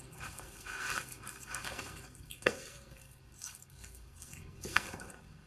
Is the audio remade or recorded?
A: remade